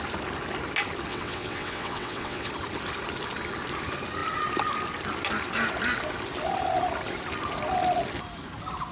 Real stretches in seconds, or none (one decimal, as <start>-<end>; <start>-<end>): 0.0-1.1; 2.5-8.9